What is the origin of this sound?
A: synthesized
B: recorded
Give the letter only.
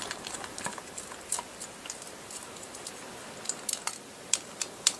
B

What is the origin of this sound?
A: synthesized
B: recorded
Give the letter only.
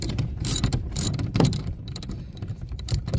A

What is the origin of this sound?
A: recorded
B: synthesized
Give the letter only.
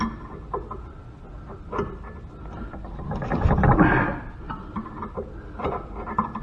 A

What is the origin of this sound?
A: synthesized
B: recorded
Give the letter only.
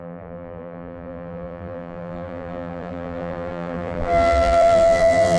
A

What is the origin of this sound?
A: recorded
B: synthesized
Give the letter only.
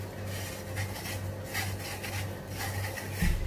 A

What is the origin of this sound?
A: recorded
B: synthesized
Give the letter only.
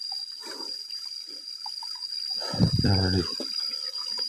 B